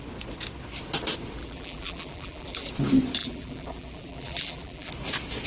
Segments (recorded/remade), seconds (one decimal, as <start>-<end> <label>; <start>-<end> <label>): 0.0-1.4 recorded; 1.4-2.7 remade; 2.7-3.2 recorded; 3.2-4.9 remade; 4.9-5.5 recorded

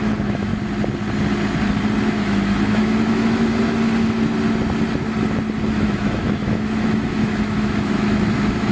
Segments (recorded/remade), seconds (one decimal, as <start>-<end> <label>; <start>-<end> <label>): 0.0-0.5 remade; 0.5-2.0 recorded; 2.0-3.5 remade; 3.5-5.7 recorded; 5.7-8.7 remade

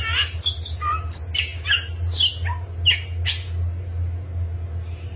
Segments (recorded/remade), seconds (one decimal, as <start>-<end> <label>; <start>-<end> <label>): 0.0-5.2 recorded

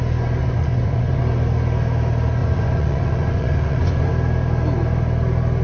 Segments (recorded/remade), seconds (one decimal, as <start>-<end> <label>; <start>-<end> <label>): 0.0-0.4 recorded; 0.4-1.2 remade; 1.2-2.4 recorded; 2.4-4.1 remade; 4.1-5.6 recorded

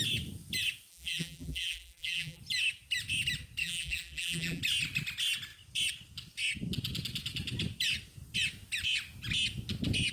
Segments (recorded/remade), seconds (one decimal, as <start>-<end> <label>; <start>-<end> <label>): 0.0-0.9 recorded; 0.9-2.4 remade; 2.4-3.6 recorded; 3.6-4.6 remade; 4.6-10.1 recorded

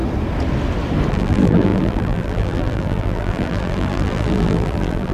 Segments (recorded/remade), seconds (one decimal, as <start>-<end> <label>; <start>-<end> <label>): 0.0-1.1 recorded; 1.1-5.1 remade

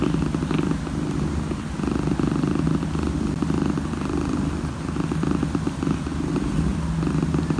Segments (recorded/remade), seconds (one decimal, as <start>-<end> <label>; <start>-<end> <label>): 0.0-7.6 recorded

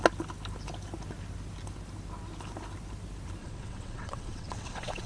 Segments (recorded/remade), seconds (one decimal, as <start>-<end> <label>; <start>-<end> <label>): 0.0-3.4 recorded; 3.4-5.1 remade